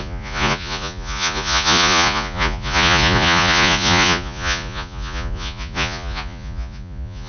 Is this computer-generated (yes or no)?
yes